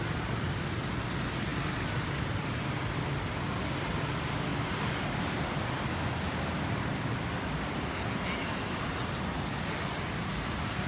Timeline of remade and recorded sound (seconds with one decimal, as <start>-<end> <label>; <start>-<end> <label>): 0.0-10.9 recorded